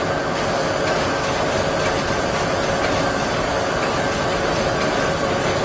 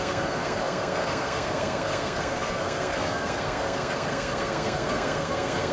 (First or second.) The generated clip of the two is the second